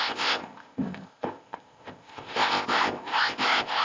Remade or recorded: remade